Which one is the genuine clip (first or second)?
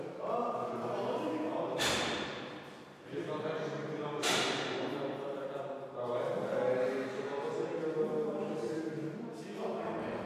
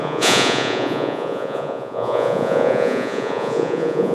first